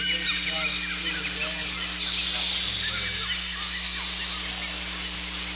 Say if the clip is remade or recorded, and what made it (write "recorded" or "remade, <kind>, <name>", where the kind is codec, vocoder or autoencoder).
recorded